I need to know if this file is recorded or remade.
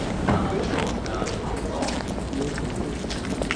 recorded